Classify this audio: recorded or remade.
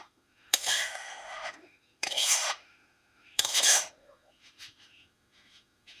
remade